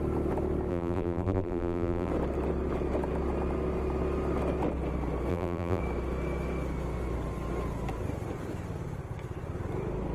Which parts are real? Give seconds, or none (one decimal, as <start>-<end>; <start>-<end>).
0.0-0.7; 2.1-5.3; 5.8-10.1